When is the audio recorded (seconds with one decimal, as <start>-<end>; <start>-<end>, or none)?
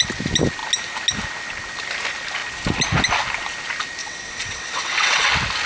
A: 0.0-4.0; 5.3-5.7